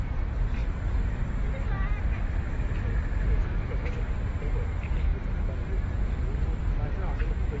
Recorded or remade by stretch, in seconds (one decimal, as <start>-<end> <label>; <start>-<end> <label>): 0.0-7.6 recorded